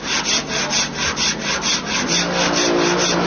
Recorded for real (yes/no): yes